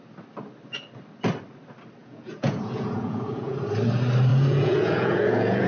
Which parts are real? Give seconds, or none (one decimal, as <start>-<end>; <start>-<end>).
0.0-2.0; 3.6-4.3